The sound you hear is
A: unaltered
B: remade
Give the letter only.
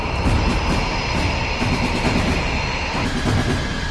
A